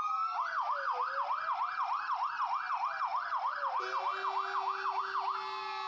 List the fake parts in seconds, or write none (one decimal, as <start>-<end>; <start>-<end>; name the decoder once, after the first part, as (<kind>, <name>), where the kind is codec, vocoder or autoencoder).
none